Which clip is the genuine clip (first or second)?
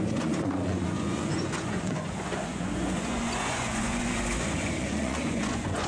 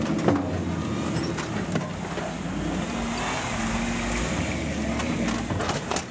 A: second